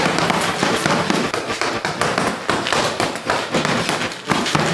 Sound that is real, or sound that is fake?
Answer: real